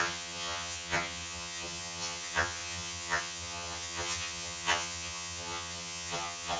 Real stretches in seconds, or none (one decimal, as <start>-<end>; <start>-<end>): none